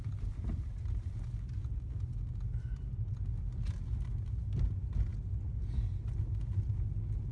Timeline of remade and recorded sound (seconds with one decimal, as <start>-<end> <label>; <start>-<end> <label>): 0.0-7.3 recorded